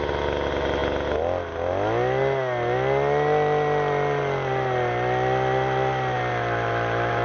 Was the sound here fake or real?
real